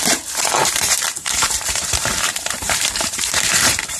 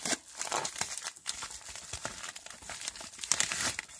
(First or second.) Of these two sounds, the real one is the second